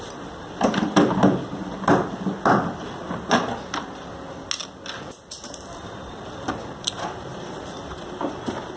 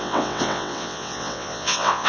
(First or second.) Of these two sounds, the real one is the first